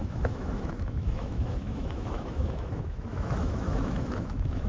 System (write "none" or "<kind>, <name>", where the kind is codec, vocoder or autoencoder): autoencoder, DAC-VAE